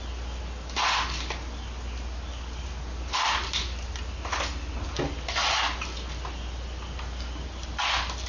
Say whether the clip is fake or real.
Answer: real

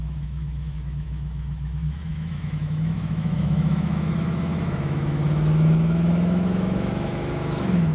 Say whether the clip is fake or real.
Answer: fake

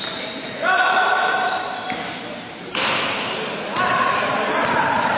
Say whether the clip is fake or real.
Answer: fake